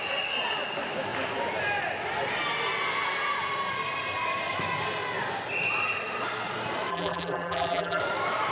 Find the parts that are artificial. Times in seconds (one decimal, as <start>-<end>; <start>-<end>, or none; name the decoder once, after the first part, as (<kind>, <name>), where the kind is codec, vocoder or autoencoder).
6.9-8.0 (vocoder, BigVGAN v2)